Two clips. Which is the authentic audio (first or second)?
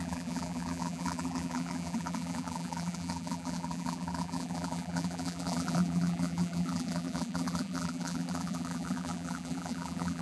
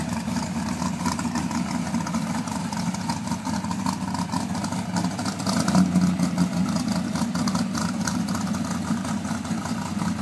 second